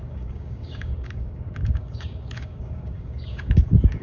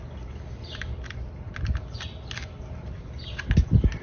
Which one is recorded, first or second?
second